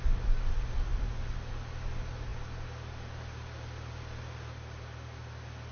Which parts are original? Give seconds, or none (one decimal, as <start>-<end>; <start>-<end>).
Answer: 0.0-5.7